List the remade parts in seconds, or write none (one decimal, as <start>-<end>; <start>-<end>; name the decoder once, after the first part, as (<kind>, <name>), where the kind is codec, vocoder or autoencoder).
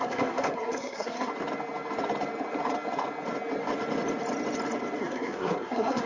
0.0-1.3 (codec, SNAC); 5.0-6.1